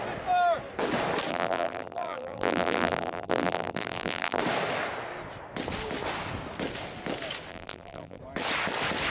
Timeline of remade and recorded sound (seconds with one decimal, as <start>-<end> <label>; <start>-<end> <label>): 0.0-1.3 recorded; 1.3-4.4 remade; 4.4-7.5 recorded; 7.5-8.2 remade; 8.2-9.1 recorded